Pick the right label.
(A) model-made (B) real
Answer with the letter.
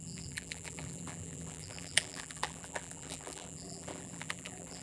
A